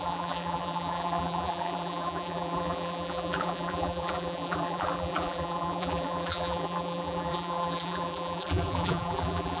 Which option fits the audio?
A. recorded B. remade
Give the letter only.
B